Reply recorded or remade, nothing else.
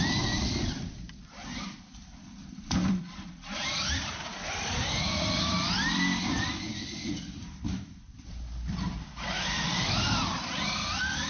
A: remade